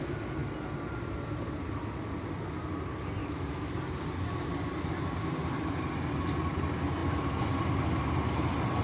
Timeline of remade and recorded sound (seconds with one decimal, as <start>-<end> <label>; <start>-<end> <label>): 0.0-3.2 recorded; 3.2-3.7 remade; 3.7-8.8 recorded